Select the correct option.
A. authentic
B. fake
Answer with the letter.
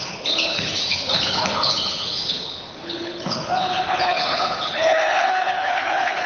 B